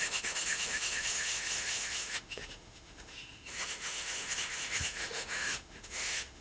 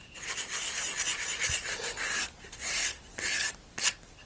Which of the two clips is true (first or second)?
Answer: second